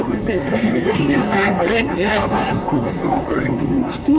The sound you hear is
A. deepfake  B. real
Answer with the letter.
A